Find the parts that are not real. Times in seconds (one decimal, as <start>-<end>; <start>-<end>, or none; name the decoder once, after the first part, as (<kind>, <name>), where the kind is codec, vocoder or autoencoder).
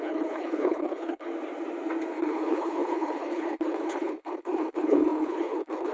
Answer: 0.0-1.3 (codec, HILCodec); 2.2-5.9